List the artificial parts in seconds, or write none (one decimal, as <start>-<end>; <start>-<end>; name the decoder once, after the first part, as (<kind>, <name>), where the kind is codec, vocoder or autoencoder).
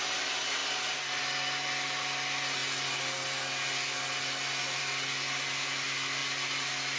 none